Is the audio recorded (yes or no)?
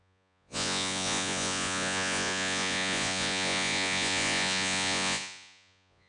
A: no